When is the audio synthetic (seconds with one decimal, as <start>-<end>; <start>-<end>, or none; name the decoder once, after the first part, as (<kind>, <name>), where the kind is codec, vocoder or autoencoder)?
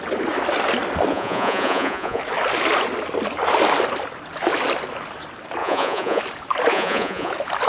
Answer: 1.1-2.2 (vocoder, Vocos); 5.6-6.2; 6.7-7.3